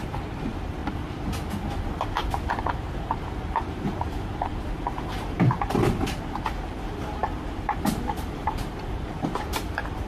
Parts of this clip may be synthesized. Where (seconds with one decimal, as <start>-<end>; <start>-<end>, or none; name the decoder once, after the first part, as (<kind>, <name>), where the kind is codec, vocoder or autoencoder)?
0.0-0.8 (vocoder, BigVGAN v2); 3.3-4.5; 5.2-10.1